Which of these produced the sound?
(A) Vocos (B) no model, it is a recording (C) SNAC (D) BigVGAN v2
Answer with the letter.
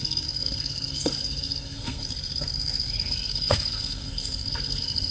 C